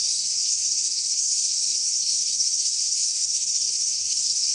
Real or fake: fake